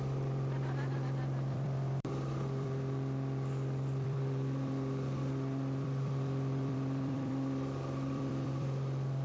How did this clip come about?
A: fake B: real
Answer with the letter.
A